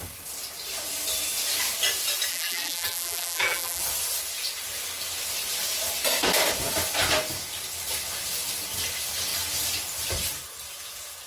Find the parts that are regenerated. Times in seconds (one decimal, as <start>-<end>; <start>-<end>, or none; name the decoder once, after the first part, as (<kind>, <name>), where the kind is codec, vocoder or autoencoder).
2.3-3.8 (vocoder, BigVGAN v2)